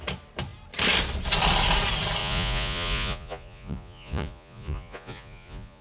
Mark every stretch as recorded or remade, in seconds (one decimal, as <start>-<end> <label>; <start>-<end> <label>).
0.0-2.2 recorded; 2.2-5.8 remade